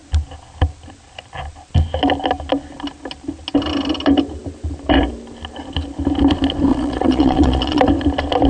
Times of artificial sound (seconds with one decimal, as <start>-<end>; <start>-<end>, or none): 6.7-7.8